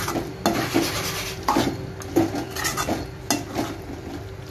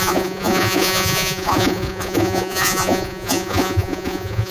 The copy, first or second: second